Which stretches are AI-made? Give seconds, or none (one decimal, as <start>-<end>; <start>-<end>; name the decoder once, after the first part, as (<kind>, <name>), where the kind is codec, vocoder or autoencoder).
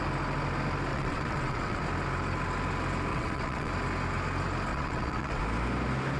0.9-1.8 (vocoder, WaveNeXt); 3.1-3.7; 4.7-5.4